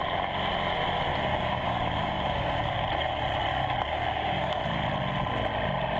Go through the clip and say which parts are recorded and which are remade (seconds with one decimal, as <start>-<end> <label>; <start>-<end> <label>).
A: 0.0-1.3 recorded; 1.3-2.9 remade; 2.9-3.5 recorded; 3.5-4.6 remade; 4.6-6.0 recorded